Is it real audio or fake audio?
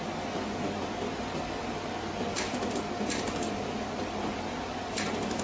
real